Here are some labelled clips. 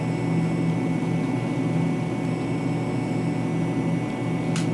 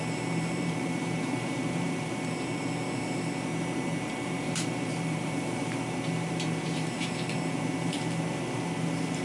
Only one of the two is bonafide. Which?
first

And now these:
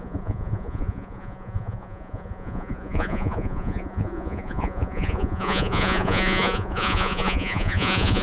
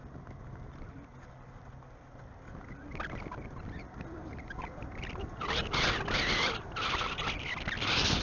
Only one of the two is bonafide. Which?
second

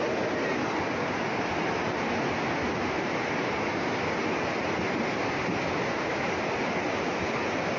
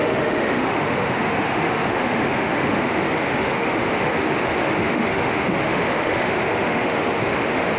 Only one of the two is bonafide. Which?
first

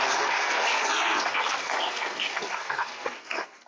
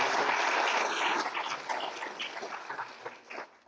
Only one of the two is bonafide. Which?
second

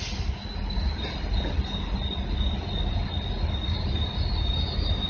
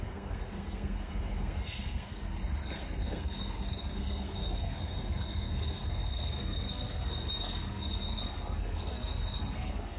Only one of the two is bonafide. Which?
first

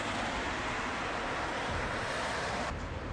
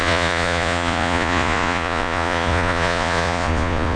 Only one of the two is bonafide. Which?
first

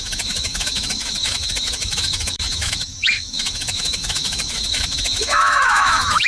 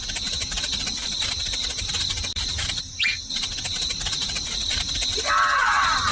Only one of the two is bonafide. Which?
second